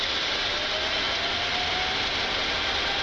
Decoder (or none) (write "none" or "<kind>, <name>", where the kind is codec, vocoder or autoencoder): none